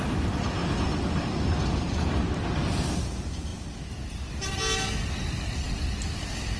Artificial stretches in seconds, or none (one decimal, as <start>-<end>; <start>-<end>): none